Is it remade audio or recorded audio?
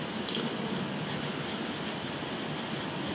recorded